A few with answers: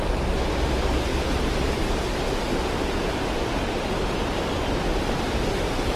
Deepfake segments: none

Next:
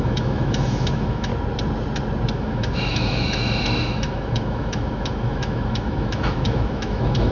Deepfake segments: 0.0-1.3 (autoencoder, DAC-VAE); 2.3-7.3

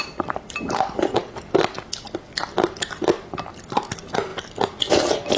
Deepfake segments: none

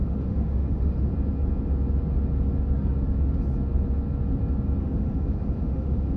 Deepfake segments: 0.0-1.1 (autoencoder, DAC-VAE); 4.8-6.2

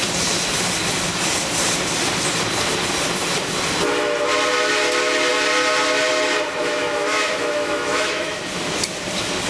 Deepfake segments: 6.6-8.4 (autoencoder, DAC-VAE)

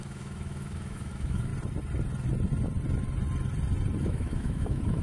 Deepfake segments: 0.0-1.5 (autoencoder, DAC-VAE); 4.0-5.0

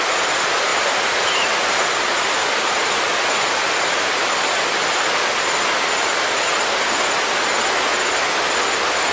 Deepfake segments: none